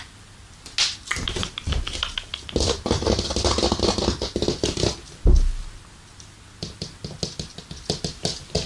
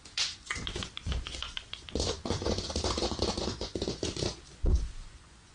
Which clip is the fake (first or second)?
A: second